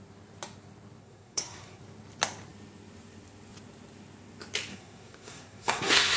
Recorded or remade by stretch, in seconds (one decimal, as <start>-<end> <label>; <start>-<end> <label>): 0.0-1.0 recorded; 1.0-1.8 remade; 1.8-4.7 recorded; 4.7-6.2 remade